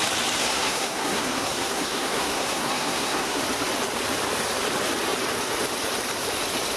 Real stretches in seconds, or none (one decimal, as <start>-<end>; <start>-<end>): 0.0-0.4; 3.4-6.8